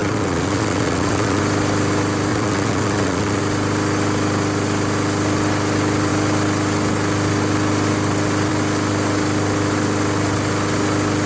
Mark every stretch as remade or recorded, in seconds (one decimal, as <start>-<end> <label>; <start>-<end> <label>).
0.0-1.4 remade; 1.4-2.3 recorded; 2.3-3.4 remade; 3.4-11.3 recorded